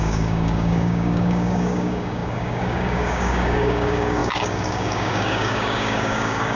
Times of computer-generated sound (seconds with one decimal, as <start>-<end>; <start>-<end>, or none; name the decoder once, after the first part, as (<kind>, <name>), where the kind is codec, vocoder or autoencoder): 0.0-6.6 (codec, DAC)